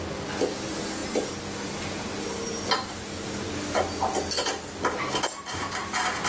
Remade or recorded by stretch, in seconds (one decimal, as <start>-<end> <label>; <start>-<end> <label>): 0.0-6.3 recorded